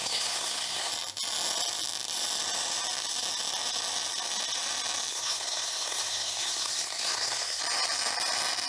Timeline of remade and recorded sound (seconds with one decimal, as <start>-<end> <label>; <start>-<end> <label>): 0.0-0.9 remade; 0.9-5.1 recorded; 5.1-7.6 remade; 7.6-8.7 recorded

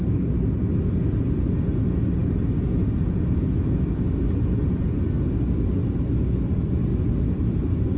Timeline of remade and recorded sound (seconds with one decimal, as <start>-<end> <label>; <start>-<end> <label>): 0.0-8.0 recorded

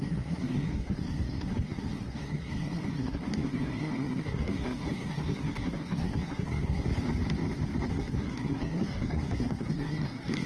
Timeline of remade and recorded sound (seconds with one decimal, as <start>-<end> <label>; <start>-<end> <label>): 0.0-6.9 remade; 6.9-7.9 recorded; 7.9-10.5 remade

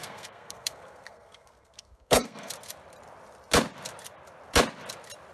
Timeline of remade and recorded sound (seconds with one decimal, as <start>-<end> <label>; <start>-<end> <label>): 0.0-2.5 remade; 2.5-5.3 recorded

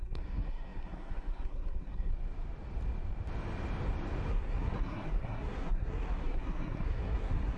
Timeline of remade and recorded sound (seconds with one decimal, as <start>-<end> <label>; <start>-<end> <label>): 0.0-2.1 remade; 2.1-4.3 recorded; 4.3-7.6 remade

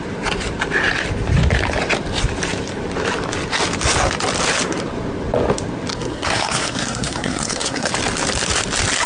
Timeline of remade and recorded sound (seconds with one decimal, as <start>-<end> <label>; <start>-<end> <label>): 0.0-5.9 recorded; 5.9-7.9 remade; 7.9-9.1 recorded

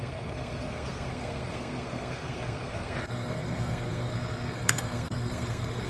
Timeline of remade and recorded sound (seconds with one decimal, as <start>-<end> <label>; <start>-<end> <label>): 0.0-5.9 remade